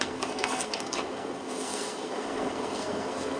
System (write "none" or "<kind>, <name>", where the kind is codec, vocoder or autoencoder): codec, SNAC